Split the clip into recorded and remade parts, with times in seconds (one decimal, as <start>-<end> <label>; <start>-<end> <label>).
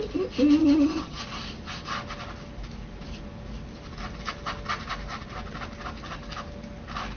0.0-0.6 recorded; 0.6-1.2 remade; 1.2-7.2 recorded